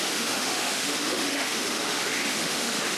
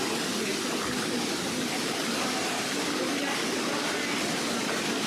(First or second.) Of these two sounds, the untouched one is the second